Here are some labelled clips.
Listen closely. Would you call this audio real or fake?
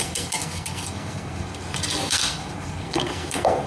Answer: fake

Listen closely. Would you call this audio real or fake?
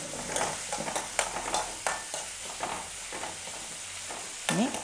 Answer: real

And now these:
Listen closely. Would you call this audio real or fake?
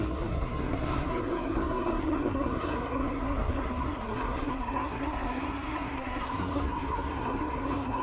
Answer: fake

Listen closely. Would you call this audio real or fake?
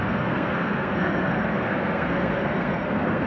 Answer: fake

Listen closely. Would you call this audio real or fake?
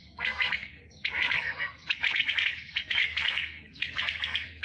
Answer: fake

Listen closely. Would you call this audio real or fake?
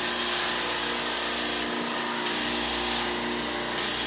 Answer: real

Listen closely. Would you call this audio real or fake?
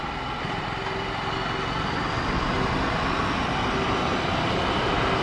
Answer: real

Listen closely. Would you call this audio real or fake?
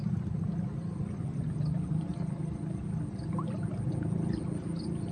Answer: real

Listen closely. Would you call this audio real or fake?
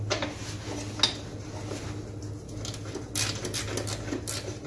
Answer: real